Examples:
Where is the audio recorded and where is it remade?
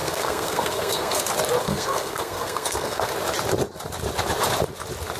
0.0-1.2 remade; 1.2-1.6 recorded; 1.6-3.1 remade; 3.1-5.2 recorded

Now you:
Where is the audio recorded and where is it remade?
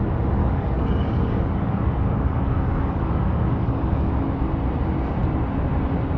0.0-0.4 recorded; 0.4-4.1 remade; 4.1-6.2 recorded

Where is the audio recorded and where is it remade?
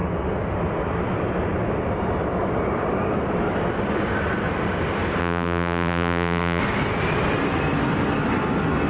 0.0-5.2 recorded; 5.2-6.6 remade; 6.6-8.9 recorded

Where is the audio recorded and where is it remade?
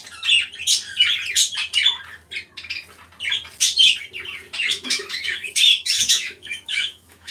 0.0-4.6 recorded; 4.6-7.3 remade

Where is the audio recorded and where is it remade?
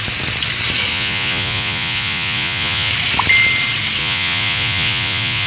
0.0-0.9 recorded; 0.9-2.9 remade; 2.9-4.0 recorded; 4.0-5.5 remade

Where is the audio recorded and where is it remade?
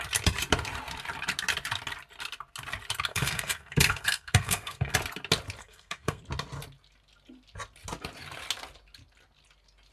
0.0-3.1 recorded; 3.1-4.9 remade; 4.9-5.6 recorded; 5.6-6.2 remade; 6.2-9.9 recorded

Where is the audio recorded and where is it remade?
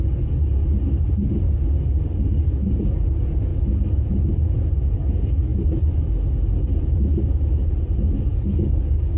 0.0-8.3 recorded; 8.3-9.2 remade